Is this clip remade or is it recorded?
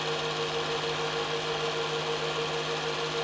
recorded